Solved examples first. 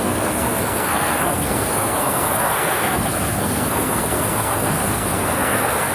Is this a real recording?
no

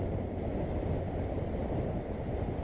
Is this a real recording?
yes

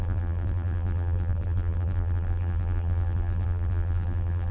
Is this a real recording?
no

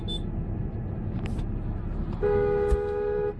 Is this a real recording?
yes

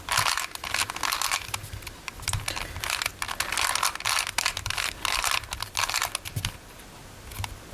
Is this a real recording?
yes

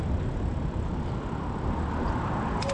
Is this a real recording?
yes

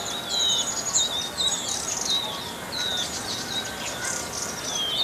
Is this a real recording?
yes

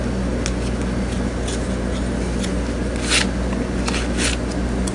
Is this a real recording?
yes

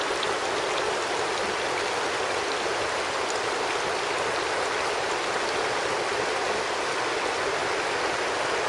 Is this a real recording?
yes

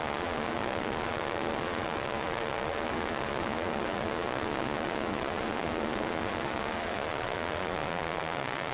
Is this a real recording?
no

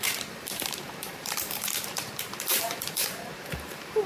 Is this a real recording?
no